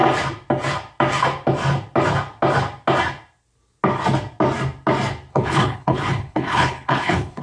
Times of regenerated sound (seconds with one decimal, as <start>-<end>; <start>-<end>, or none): 5.3-7.4